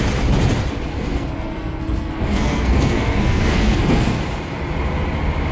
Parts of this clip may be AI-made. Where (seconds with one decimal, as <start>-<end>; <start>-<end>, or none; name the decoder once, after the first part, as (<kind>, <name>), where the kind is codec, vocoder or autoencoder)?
0.9-4.2 (codec, SNAC)